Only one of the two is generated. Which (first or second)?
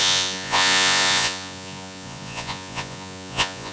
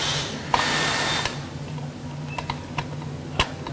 first